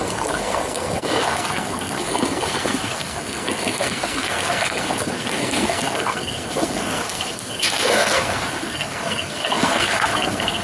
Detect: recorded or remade remade